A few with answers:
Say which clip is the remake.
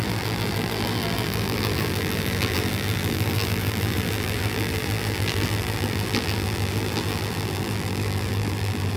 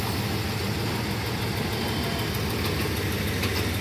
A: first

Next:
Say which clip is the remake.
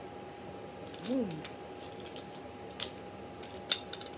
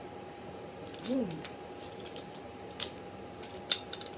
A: second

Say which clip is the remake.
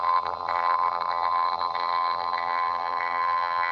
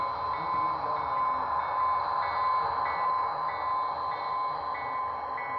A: first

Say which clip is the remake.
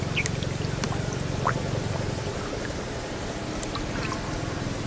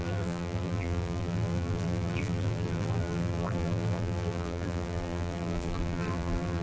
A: second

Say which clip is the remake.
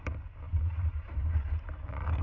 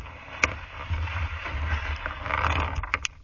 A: first